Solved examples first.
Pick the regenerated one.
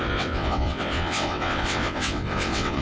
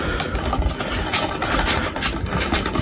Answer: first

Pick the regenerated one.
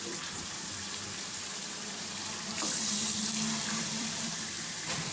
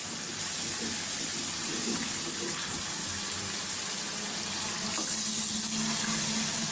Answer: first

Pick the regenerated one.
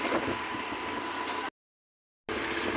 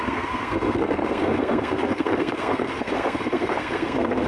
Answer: second